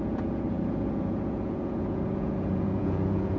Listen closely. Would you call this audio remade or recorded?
remade